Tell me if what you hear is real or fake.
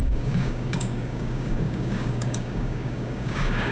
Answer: fake